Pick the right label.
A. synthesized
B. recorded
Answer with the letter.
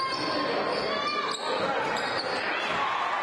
B